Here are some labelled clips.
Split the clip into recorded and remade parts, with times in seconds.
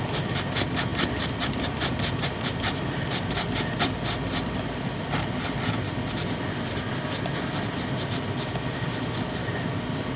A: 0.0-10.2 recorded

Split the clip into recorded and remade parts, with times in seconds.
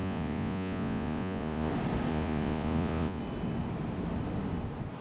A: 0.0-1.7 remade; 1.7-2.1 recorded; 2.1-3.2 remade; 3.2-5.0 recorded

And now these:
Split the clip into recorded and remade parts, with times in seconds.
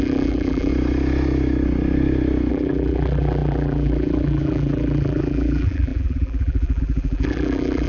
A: 0.0-0.7 remade; 0.7-2.5 recorded; 2.5-7.9 remade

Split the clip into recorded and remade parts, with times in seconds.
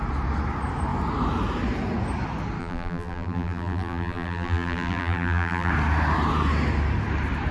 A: 0.0-2.6 recorded; 2.6-5.7 remade; 5.7-7.5 recorded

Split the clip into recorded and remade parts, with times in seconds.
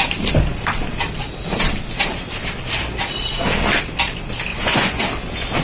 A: 0.0-4.5 recorded; 4.5-5.0 remade; 5.0-5.6 recorded